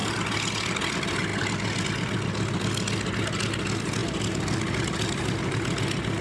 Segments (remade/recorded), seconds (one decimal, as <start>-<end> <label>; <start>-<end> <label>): 0.0-6.2 recorded